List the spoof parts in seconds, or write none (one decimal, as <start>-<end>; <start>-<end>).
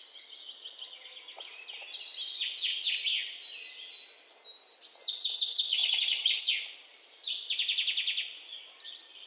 5.8-7.5